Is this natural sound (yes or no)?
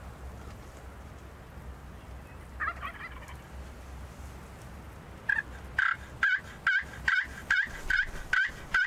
yes